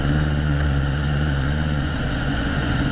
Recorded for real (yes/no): no